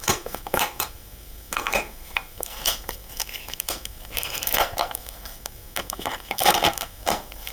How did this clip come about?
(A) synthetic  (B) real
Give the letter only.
A